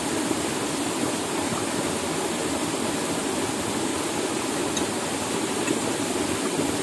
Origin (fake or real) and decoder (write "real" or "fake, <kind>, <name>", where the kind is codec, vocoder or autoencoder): real